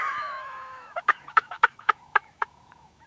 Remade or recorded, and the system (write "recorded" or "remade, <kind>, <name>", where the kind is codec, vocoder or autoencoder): remade, autoencoder, DAC-VAE